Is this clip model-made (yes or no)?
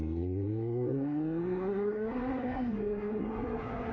yes